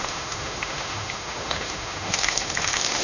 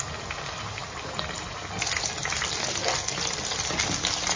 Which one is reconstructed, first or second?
first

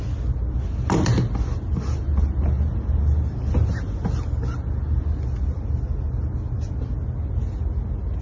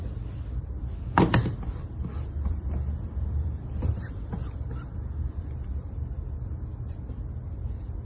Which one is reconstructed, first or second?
second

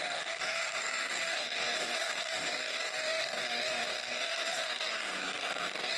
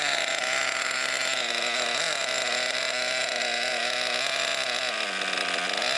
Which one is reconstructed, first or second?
first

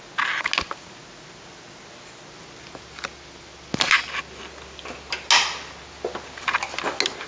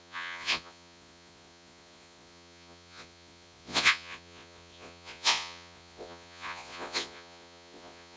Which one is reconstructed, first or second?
second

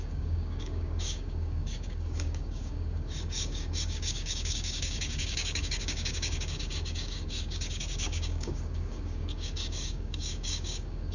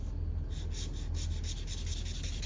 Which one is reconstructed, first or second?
first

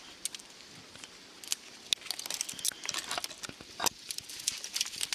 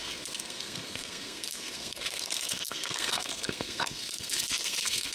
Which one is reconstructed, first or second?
second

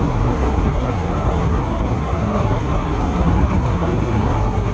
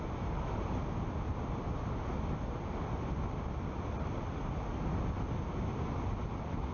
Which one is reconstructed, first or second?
first